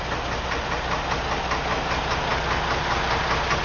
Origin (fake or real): real